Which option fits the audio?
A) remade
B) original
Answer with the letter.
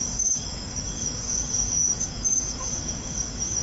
A